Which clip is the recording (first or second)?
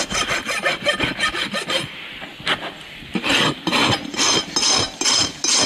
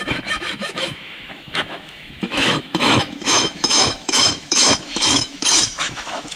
first